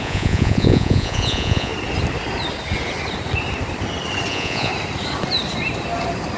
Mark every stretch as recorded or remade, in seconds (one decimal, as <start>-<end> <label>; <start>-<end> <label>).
0.0-1.7 remade; 1.7-4.3 recorded; 4.3-4.7 remade; 4.7-6.4 recorded

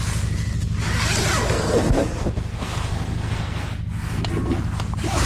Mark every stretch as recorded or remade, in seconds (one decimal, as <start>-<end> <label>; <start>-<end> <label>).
0.0-1.4 recorded; 1.4-4.6 remade; 4.6-5.3 recorded

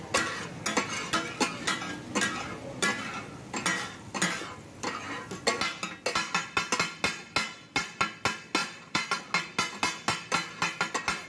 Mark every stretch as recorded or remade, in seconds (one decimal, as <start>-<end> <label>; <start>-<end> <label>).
0.0-8.6 recorded; 8.6-9.2 remade; 9.2-11.3 recorded

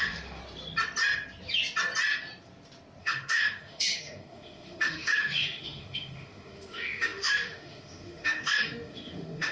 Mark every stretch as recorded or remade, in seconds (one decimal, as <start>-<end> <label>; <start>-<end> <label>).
0.0-0.4 remade; 0.4-3.0 recorded; 3.0-9.5 remade

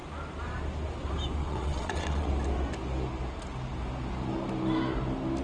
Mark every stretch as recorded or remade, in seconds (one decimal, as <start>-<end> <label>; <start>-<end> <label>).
0.0-1.4 recorded; 1.4-2.3 remade; 2.3-5.4 recorded

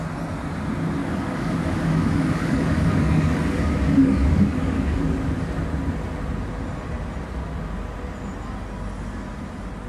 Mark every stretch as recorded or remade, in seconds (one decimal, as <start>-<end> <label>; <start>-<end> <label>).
0.0-1.0 recorded; 1.0-5.3 remade; 5.3-9.9 recorded